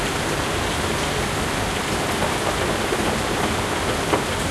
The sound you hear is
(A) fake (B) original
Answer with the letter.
B